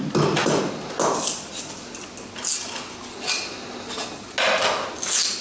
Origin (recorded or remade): recorded